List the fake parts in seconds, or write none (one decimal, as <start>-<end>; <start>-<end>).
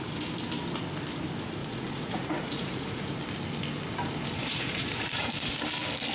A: 1.6-3.1; 4.4-5.3